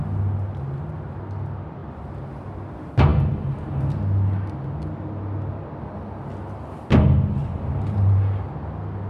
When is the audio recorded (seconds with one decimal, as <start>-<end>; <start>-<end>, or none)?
0.0-7.4; 8.2-9.1